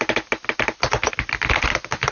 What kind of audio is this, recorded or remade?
recorded